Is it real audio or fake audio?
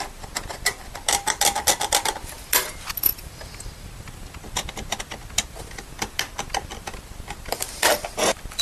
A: real